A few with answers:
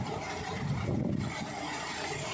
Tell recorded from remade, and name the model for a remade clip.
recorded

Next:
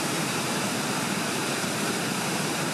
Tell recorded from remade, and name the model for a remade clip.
remade, vocoder, BigVGAN v2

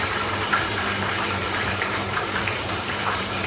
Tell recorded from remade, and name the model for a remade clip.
remade, vocoder, BigVGAN v2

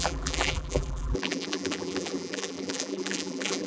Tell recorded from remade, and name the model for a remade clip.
remade, vocoder, BigVGAN v2